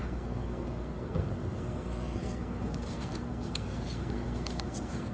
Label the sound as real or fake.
fake